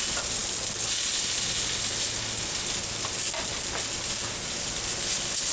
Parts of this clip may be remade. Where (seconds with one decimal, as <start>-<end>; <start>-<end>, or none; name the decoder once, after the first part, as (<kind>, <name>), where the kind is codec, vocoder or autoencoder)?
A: none